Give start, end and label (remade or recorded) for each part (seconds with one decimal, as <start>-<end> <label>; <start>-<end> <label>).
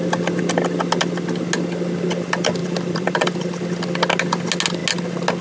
0.0-2.6 recorded; 2.6-3.5 remade; 3.5-5.4 recorded